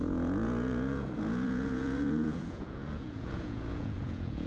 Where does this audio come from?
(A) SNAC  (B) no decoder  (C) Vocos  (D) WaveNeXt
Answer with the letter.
C